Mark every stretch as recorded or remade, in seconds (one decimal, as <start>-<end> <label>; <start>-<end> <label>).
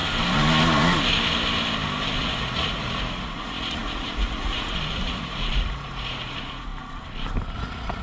0.0-2.2 recorded; 2.2-6.7 remade; 6.7-7.5 recorded; 7.5-8.0 remade